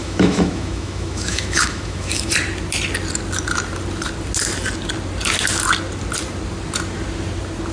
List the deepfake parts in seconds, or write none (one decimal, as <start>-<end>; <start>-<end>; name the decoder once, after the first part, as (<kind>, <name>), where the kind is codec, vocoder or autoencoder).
0.0-2.3 (autoencoder, DAC-VAE)